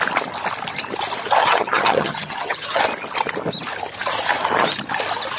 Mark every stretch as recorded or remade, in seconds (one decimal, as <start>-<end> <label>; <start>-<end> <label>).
0.0-1.4 recorded; 1.4-2.8 remade; 2.8-5.4 recorded